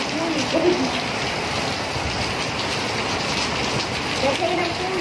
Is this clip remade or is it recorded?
recorded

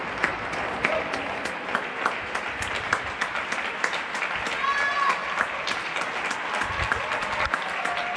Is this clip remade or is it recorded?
recorded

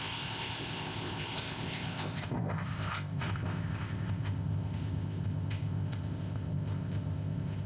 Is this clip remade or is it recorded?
remade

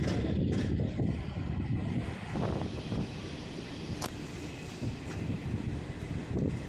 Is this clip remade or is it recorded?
recorded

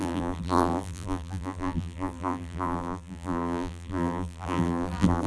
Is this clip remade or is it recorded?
remade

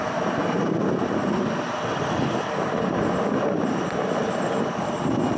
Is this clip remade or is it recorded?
recorded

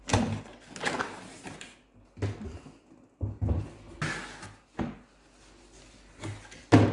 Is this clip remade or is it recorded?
recorded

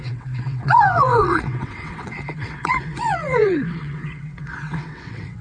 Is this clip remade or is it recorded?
remade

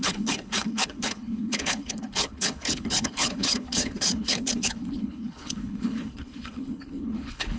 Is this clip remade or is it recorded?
remade